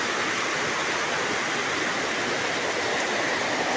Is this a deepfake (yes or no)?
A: no